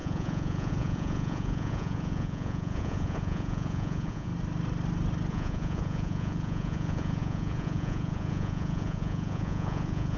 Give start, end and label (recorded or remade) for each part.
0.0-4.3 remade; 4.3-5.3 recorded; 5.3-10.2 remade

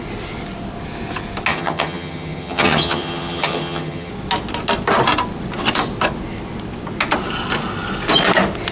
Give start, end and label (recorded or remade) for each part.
0.0-1.5 recorded; 1.5-4.1 remade; 4.1-8.7 recorded

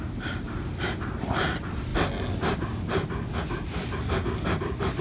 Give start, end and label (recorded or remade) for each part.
0.0-5.0 recorded

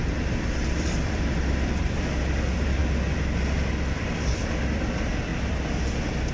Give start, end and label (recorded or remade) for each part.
0.0-2.8 remade; 2.8-3.7 recorded; 3.7-5.3 remade; 5.3-6.3 recorded

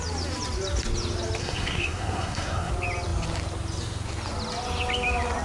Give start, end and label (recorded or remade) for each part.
0.0-1.4 recorded; 1.4-2.7 remade; 2.7-5.4 recorded

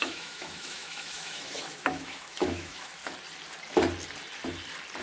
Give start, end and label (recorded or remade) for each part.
0.0-3.0 remade; 3.0-5.0 recorded

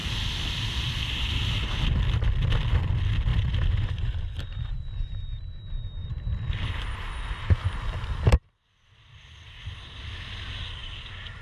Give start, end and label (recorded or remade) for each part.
0.0-3.3 recorded; 3.3-4.7 remade; 4.7-6.0 recorded; 6.0-6.7 remade; 6.7-10.8 recorded; 10.8-11.4 remade